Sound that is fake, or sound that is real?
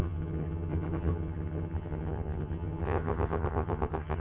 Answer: fake